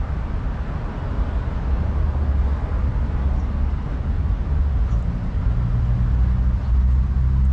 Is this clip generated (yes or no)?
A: no